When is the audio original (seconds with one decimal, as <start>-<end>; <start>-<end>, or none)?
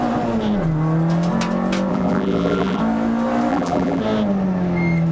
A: 0.0-1.9; 2.8-3.5; 4.0-5.1